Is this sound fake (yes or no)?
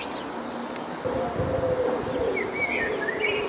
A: no